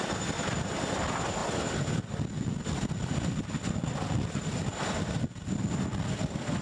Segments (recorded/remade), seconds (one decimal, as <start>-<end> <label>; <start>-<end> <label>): 0.0-6.6 recorded